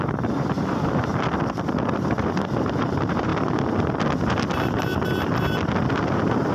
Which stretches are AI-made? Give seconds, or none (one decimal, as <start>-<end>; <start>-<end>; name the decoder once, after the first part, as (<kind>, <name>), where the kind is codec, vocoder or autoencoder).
0.0-1.1 (vocoder, BigVGAN v2); 2.6-3.3; 5.9-6.5

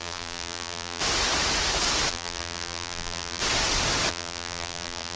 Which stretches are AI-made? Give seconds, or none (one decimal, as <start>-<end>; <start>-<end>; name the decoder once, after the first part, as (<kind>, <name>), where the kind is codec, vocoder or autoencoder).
0.0-1.0 (vocoder, BigVGAN v2); 2.1-3.4; 4.1-5.2

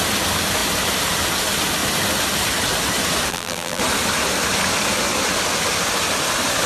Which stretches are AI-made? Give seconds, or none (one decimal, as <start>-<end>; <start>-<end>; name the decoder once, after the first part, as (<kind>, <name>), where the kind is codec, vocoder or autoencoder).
3.3-3.8 (vocoder, BigVGAN v2)

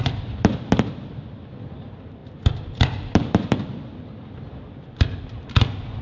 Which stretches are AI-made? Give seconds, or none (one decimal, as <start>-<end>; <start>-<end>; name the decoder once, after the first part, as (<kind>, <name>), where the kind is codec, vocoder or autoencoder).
0.0-6.0 (vocoder, BigVGAN v2)

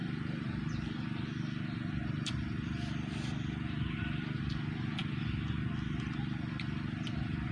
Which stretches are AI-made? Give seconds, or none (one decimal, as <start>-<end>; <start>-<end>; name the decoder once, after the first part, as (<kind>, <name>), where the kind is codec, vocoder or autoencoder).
0.0-0.9 (vocoder, BigVGAN v2)